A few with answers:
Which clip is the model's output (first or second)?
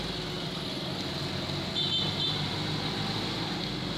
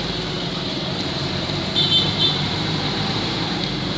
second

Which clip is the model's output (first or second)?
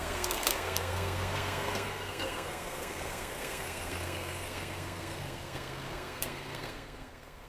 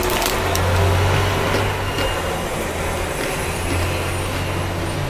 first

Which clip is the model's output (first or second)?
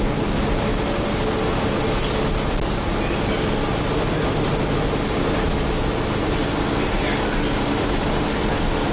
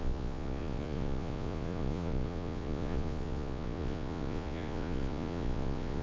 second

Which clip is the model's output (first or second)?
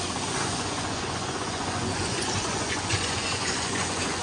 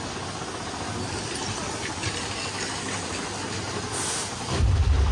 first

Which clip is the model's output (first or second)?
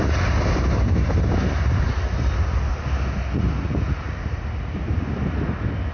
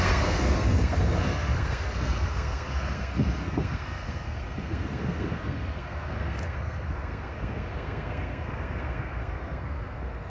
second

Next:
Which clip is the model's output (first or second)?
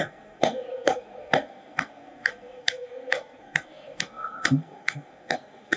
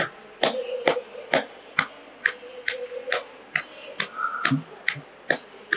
first